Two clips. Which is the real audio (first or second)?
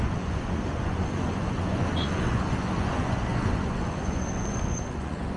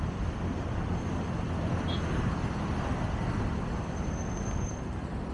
second